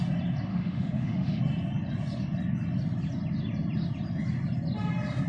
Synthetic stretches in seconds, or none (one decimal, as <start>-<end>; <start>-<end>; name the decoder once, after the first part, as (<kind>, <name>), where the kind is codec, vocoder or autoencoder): 0.5-1.4 (autoencoder, DAC-VAE)